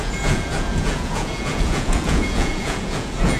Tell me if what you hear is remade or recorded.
remade